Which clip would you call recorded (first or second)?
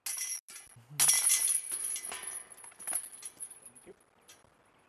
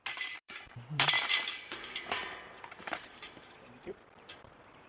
first